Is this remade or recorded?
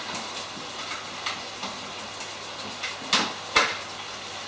recorded